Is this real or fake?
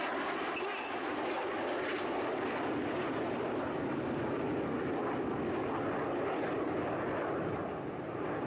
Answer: real